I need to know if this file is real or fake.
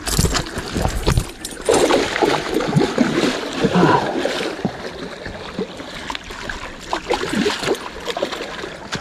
real